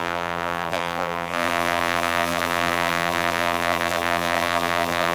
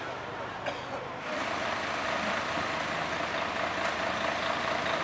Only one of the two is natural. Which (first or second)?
second